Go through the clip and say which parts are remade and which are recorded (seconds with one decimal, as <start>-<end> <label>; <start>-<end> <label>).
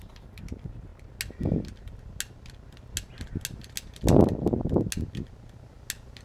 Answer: 0.0-6.2 recorded